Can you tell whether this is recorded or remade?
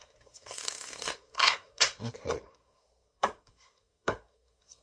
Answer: remade